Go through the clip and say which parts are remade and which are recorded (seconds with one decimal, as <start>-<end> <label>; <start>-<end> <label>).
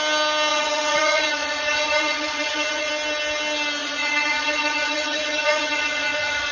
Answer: 0.0-0.5 recorded; 0.5-2.9 remade; 2.9-3.8 recorded; 3.8-6.5 remade